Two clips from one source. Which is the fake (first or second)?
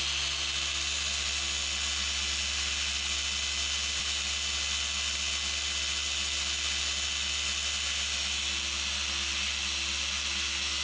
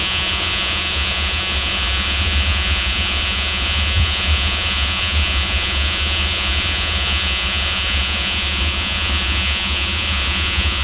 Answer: second